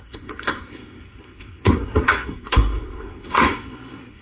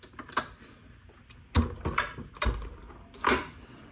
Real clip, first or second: second